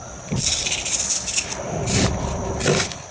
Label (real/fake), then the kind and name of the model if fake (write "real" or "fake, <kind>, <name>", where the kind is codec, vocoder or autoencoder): real